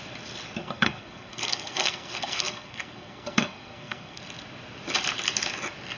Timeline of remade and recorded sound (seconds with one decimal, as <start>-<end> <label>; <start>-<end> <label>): 0.0-0.6 recorded; 0.6-4.2 remade; 4.2-6.0 recorded